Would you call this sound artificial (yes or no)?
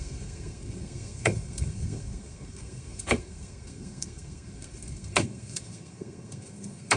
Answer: yes